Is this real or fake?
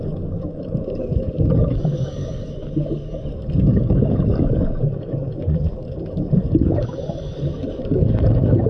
fake